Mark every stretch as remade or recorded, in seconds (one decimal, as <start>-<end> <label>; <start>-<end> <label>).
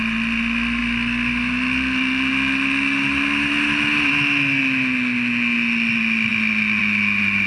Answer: 0.0-7.5 recorded